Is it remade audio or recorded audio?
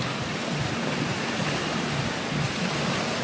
recorded